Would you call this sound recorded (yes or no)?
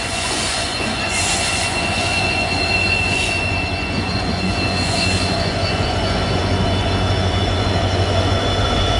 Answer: no